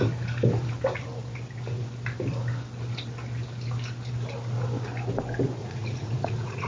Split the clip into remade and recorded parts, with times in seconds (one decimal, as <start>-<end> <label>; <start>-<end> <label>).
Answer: 0.0-5.6 recorded; 5.6-6.7 remade

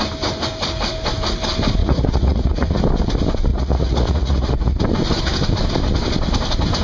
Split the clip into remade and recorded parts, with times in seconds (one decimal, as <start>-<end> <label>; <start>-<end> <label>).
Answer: 0.0-1.8 recorded; 1.8-2.8 remade; 2.8-3.5 recorded; 3.5-4.8 remade; 4.8-6.8 recorded

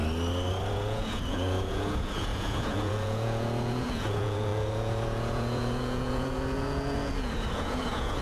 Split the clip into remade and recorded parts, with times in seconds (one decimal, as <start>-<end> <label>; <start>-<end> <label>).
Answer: 0.0-0.7 recorded; 0.7-8.2 remade

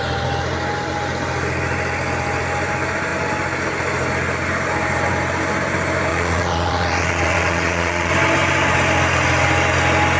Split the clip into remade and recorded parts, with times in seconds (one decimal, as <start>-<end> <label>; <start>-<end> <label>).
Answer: 0.0-6.1 recorded; 6.1-8.1 remade; 8.1-10.2 recorded